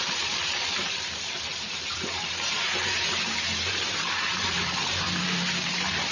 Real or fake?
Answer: fake